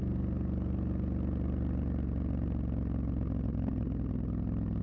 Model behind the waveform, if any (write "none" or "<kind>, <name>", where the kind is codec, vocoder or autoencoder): none